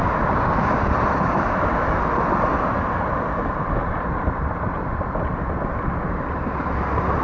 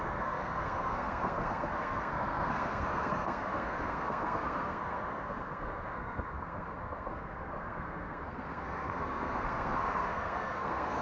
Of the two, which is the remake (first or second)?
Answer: second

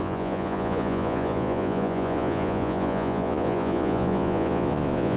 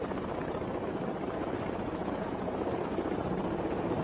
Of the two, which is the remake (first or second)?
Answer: first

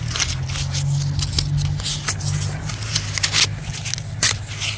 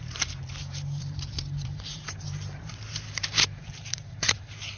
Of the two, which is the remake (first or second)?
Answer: second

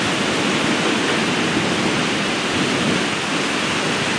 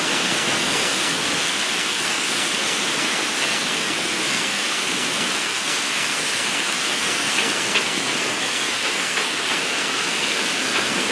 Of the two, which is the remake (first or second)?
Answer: second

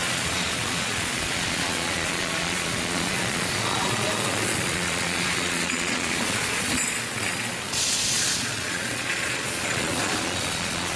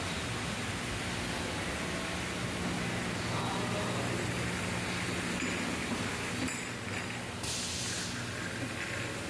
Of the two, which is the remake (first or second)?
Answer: first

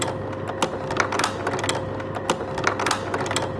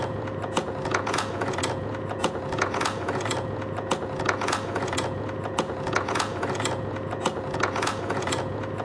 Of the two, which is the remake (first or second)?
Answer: second